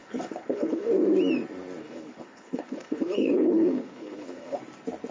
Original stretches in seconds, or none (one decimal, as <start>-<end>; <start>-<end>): 0.9-1.8; 4.6-5.1